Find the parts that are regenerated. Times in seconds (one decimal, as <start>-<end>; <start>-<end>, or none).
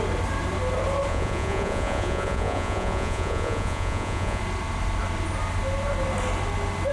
1.1-4.4